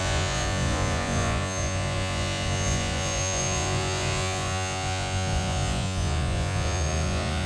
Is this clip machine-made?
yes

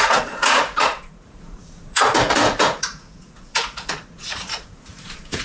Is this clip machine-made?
yes